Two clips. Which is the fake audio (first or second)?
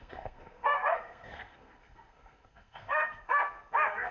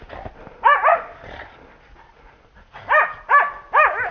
first